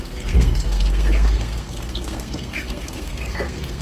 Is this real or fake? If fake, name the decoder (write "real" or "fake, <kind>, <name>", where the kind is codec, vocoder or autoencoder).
fake, codec, SNAC